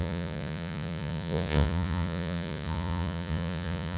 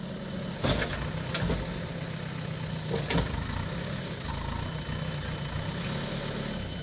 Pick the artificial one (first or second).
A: first